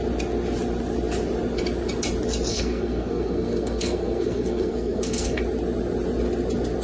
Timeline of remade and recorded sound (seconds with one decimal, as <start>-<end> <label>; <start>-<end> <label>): 0.0-2.5 recorded; 2.5-5.4 remade; 5.4-6.8 recorded